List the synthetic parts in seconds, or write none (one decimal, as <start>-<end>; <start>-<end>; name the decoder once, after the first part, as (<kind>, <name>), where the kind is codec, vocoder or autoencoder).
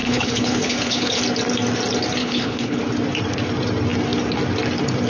0.0-1.2 (codec, HILCodec); 2.2-2.8